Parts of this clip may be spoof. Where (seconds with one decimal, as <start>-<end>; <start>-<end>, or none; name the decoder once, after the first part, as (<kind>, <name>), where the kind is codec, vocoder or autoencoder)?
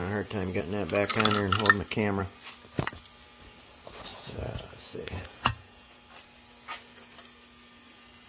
0.0-0.6 (vocoder, Vocos); 4.1-6.0